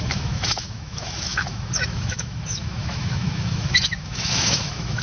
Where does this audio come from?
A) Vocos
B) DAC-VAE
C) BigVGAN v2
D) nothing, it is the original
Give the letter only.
B